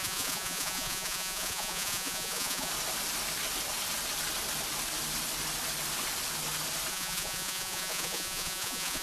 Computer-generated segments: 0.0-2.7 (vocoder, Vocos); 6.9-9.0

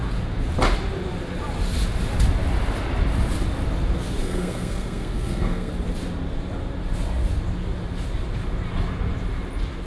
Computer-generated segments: 4.2-5.7 (codec, SNAC)